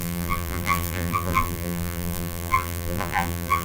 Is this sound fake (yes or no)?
yes